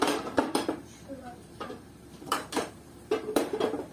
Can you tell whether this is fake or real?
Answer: fake